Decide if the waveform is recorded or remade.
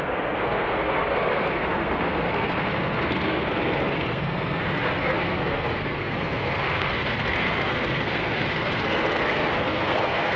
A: remade